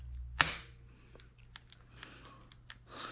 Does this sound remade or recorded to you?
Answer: recorded